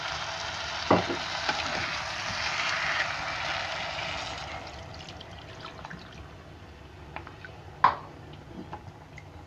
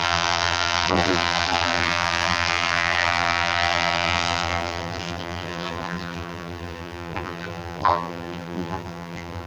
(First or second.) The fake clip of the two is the second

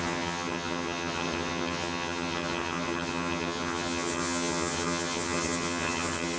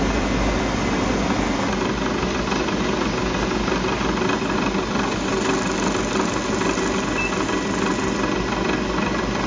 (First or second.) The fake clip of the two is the first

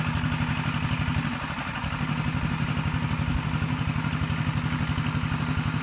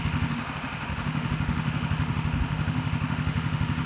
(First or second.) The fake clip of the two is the second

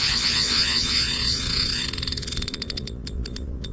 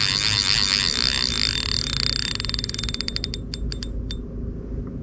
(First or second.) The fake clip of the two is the first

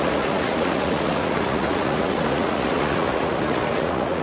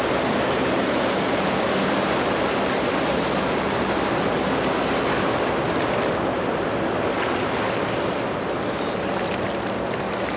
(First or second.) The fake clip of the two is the first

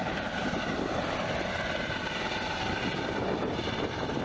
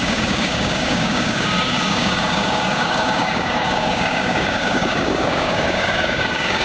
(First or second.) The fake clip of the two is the second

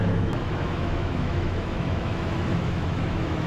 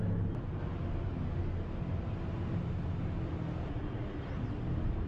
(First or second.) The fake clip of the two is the first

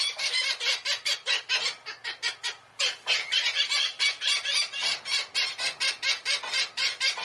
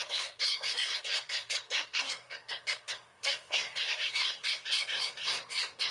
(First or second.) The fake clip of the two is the second